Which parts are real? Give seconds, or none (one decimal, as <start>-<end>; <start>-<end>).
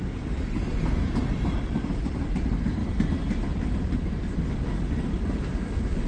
0.0-6.1